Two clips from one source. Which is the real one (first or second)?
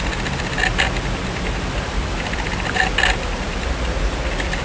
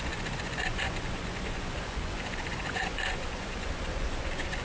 first